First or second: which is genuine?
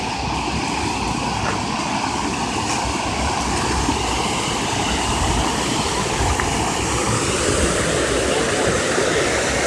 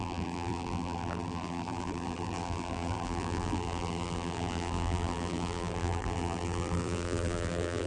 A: first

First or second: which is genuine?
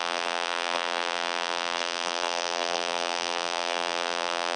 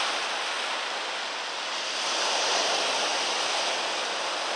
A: second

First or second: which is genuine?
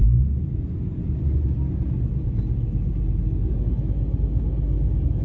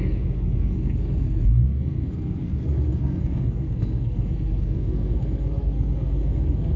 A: first